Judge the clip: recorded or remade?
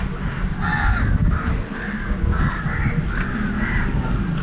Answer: recorded